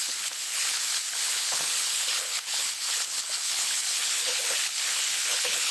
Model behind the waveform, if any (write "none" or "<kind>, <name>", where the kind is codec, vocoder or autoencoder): codec, HILCodec